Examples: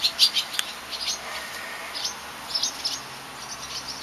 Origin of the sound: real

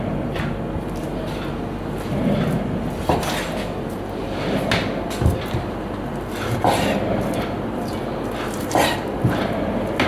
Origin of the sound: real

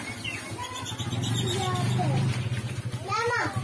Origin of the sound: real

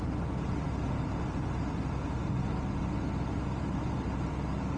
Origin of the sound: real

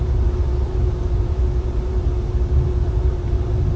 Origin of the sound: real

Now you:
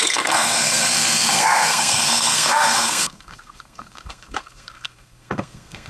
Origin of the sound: fake